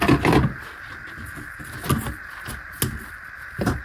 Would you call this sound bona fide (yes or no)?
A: yes